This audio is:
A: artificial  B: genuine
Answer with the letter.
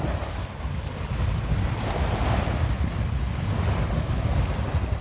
B